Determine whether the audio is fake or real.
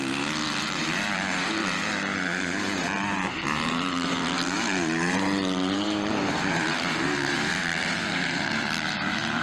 fake